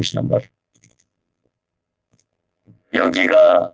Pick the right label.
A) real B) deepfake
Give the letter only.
B